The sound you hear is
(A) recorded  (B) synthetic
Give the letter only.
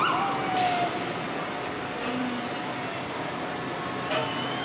A